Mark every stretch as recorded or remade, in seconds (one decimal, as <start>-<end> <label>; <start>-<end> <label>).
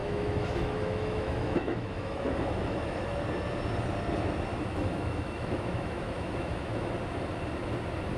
0.0-3.2 remade; 3.2-4.5 recorded; 4.5-6.9 remade; 6.9-8.2 recorded